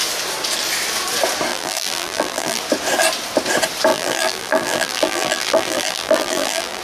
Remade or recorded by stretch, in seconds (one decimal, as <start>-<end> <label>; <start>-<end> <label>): 0.0-1.5 recorded; 1.5-2.6 remade; 2.6-3.9 recorded; 3.9-6.8 remade